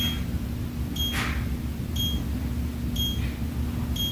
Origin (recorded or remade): recorded